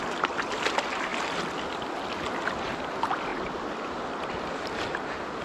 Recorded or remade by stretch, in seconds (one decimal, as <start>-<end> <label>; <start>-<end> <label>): 0.0-5.4 recorded